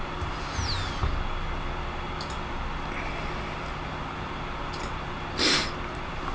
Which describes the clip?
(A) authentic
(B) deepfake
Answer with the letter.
A